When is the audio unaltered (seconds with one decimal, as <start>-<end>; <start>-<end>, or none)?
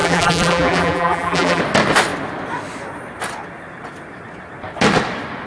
1.6-5.5